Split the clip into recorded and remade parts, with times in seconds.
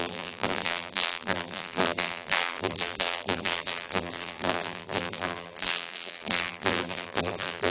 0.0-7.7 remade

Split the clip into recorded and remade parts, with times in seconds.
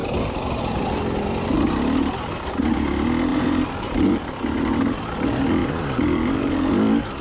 0.0-0.6 remade; 0.6-3.3 recorded; 3.3-4.2 remade; 4.2-5.6 recorded; 5.6-6.7 remade; 6.7-7.2 recorded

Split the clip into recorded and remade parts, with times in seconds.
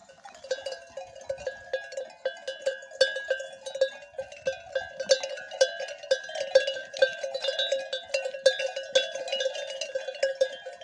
0.0-10.8 recorded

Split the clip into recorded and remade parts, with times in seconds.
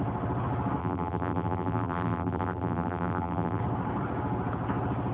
0.0-0.8 recorded; 0.8-3.6 remade; 3.6-5.1 recorded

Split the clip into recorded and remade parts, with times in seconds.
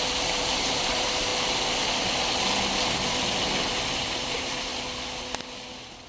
0.0-1.3 remade; 1.3-4.0 recorded; 4.0-4.7 remade; 4.7-6.1 recorded